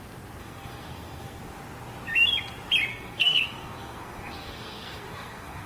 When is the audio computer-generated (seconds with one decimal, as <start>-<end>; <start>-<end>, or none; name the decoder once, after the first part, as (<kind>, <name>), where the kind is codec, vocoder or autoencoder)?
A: 0.4-1.4 (codec, SNAC); 2.9-5.7

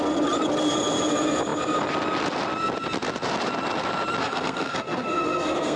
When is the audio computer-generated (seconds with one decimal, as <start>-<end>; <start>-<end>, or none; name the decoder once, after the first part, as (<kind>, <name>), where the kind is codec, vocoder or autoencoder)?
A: 4.2-5.8 (codec, SNAC)